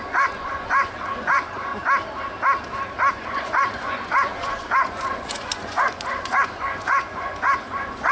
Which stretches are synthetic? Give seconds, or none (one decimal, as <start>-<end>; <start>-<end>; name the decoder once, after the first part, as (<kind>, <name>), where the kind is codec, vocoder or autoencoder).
0.0-1.7 (vocoder, Vocos); 3.1-8.1